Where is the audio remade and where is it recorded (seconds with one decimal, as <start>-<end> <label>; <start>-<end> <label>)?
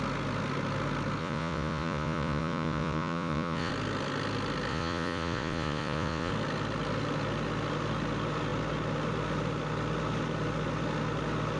0.0-1.2 recorded; 1.2-3.7 remade; 3.7-4.7 recorded; 4.7-6.3 remade; 6.3-11.6 recorded